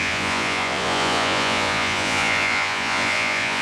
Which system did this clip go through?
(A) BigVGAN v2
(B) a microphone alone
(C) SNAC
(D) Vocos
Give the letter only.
D